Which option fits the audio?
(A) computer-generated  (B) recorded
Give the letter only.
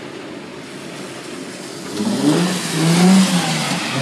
B